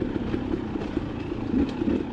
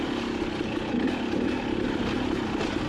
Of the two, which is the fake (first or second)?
first